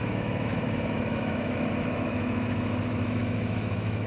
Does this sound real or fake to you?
fake